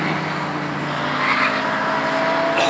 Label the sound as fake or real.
real